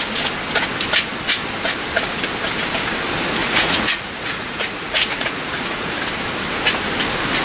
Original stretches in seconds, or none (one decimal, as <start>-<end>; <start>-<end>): 0.0-3.4; 5.9-7.4